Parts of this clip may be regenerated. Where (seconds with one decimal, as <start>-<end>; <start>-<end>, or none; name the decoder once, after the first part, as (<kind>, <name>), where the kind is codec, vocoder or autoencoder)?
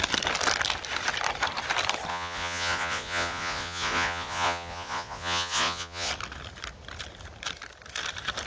2.1-6.1 (vocoder, Vocos)